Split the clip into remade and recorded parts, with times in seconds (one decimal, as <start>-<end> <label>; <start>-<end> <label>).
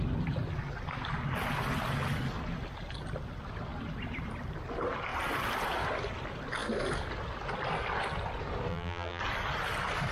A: 0.0-8.7 recorded; 8.7-9.2 remade; 9.2-10.1 recorded